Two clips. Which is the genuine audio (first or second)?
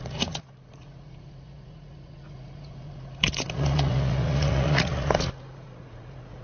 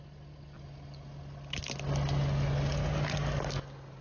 second